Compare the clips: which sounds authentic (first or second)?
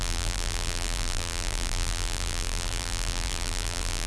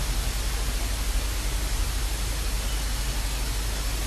second